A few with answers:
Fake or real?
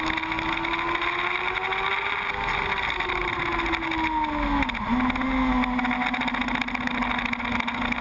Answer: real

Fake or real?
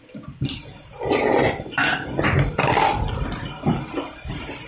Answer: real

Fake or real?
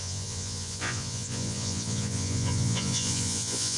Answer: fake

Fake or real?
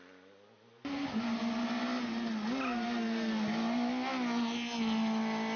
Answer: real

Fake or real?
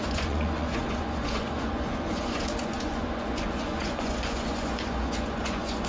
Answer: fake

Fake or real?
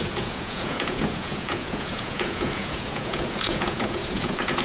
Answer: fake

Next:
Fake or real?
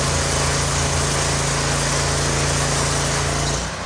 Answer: real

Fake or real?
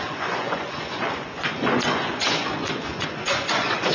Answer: fake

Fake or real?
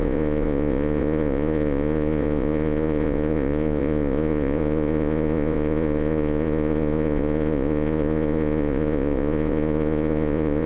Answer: fake